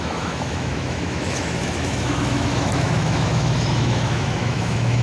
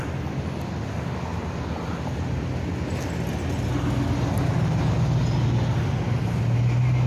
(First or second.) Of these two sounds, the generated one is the first